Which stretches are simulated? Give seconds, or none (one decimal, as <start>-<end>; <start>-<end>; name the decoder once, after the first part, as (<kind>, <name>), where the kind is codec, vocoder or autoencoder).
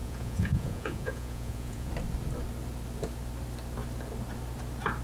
0.0-1.9 (vocoder, Vocos)